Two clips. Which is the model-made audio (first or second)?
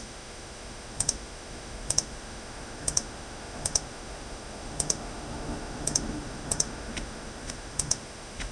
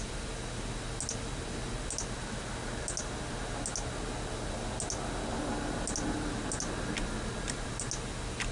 first